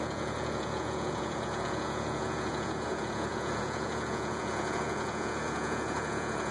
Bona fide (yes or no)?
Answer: no